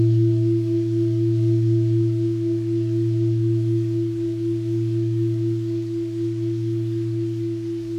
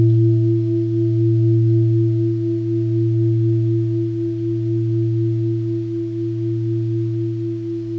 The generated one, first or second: first